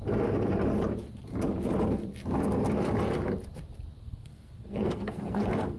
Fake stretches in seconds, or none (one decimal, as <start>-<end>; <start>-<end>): 4.0-5.8